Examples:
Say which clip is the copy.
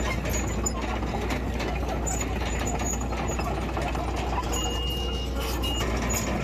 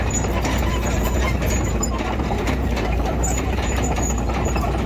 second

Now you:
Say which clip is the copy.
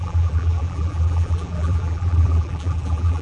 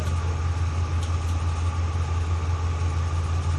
first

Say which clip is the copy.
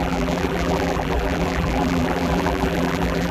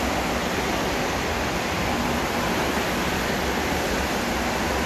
first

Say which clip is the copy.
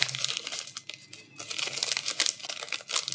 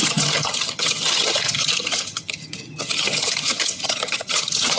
second